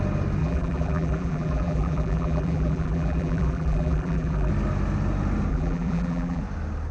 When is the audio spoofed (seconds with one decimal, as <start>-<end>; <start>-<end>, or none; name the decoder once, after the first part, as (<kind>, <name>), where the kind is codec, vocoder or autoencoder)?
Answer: 0.4-4.5 (vocoder, BigVGAN v2); 5.5-6.4